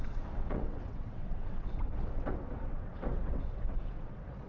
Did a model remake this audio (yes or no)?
yes